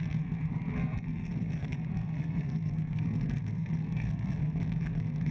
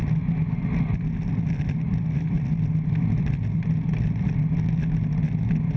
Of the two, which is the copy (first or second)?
first